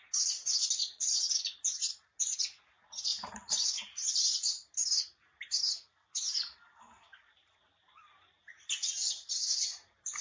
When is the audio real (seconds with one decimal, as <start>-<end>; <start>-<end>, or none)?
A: 0.0-0.8; 1.3-10.2